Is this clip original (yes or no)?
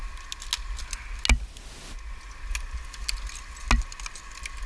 yes